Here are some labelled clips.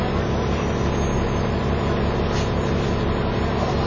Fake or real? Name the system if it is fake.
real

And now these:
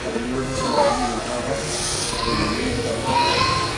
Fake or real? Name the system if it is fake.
fake, codec, SNAC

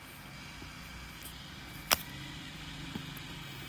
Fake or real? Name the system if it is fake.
real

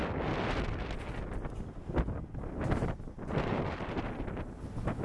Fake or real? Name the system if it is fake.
real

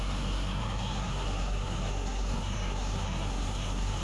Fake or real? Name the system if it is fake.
fake, codec, SNAC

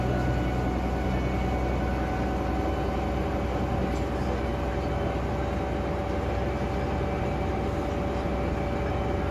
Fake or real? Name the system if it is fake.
real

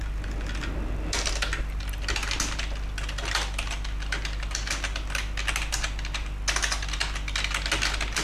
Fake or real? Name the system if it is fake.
real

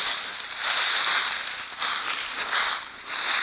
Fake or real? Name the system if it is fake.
real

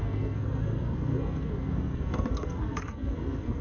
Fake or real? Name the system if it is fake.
fake, codec, SNAC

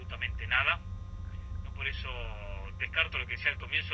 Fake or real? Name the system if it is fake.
real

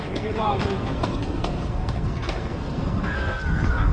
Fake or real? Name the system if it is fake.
fake, codec, SNAC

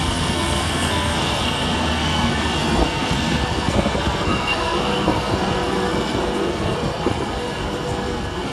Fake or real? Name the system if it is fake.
fake, codec, SNAC